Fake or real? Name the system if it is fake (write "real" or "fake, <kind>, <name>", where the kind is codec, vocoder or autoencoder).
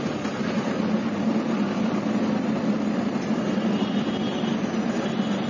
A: real